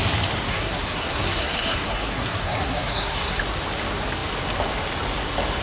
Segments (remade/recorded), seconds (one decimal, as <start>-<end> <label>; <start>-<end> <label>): 0.0-0.5 recorded; 0.5-3.4 remade; 3.4-5.6 recorded